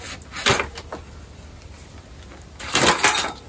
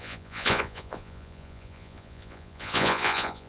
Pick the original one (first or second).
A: first